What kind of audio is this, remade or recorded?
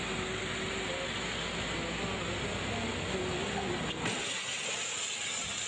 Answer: recorded